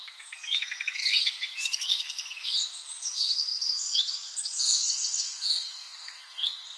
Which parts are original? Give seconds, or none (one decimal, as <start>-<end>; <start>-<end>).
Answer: none